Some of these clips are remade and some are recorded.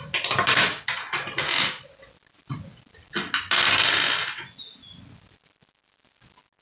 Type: recorded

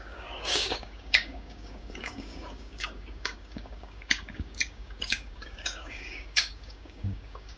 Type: remade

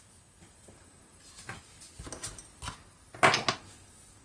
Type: recorded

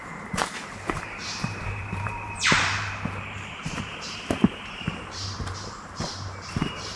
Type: remade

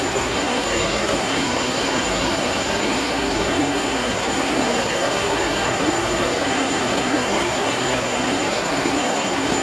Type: remade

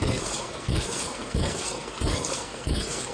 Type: remade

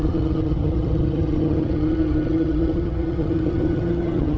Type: remade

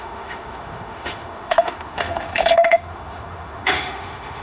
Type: remade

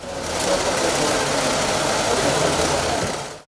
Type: recorded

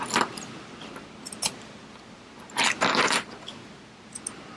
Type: recorded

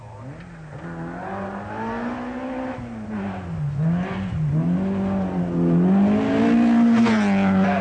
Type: recorded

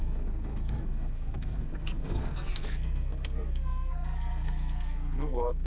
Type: remade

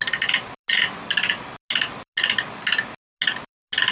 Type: recorded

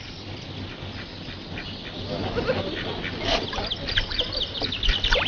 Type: recorded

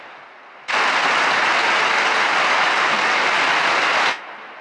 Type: recorded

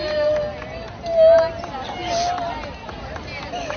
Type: recorded